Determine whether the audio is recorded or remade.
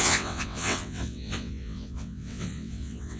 remade